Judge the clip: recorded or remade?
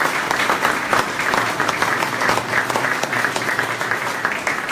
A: recorded